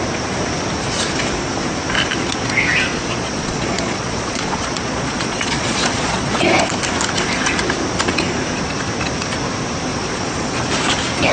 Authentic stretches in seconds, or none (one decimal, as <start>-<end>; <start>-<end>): 0.0-2.9; 6.4-9.9; 10.6-11.3